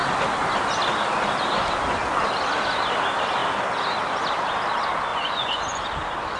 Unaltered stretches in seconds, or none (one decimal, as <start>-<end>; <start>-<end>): 0.0-5.1; 5.8-6.4